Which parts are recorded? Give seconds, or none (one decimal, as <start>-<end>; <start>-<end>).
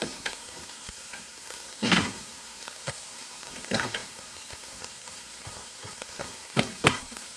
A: none